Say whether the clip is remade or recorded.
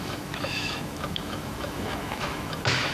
remade